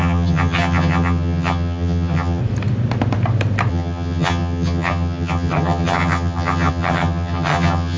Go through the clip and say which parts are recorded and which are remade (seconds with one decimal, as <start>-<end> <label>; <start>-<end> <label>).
0.0-2.4 remade; 2.4-3.7 recorded; 3.7-8.0 remade